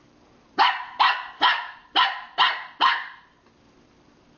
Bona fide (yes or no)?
no